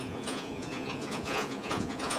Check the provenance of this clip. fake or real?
fake